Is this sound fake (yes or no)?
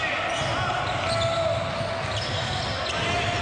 no